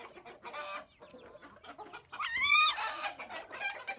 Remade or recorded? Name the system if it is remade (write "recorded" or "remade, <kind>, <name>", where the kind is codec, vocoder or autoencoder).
recorded